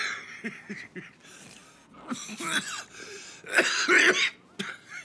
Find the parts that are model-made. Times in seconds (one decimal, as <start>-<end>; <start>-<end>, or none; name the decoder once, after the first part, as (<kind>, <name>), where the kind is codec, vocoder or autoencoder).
none